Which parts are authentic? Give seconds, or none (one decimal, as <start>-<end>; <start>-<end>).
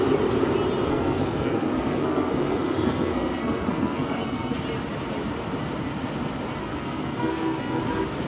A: 0.0-0.9; 4.6-6.6; 7.8-8.3